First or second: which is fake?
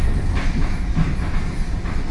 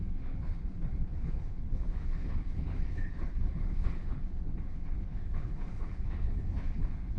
second